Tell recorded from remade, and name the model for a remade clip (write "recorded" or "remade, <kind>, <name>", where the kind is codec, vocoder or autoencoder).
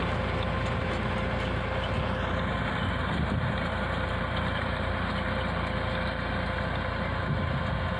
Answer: recorded